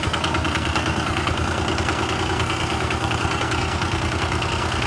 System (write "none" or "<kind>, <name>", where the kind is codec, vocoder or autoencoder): codec, SNAC